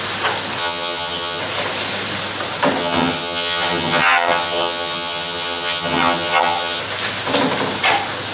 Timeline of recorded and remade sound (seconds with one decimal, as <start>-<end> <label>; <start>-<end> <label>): 0.0-0.6 recorded; 0.6-1.4 remade; 1.4-2.8 recorded; 2.8-6.8 remade; 6.8-8.3 recorded